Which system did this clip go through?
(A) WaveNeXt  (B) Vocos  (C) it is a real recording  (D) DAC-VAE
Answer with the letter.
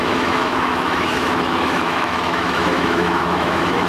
D